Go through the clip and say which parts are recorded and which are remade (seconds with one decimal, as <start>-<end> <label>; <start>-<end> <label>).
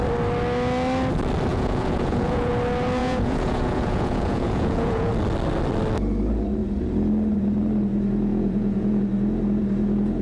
0.0-1.5 recorded; 1.5-2.5 remade; 2.5-3.0 recorded; 3.0-5.1 remade; 5.1-8.3 recorded; 8.3-9.0 remade; 9.0-10.2 recorded